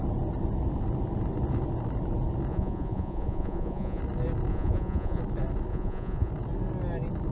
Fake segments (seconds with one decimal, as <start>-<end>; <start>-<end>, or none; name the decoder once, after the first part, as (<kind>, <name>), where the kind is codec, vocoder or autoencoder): 2.5-4.0 (vocoder, Vocos); 4.5-5.2; 5.7-6.3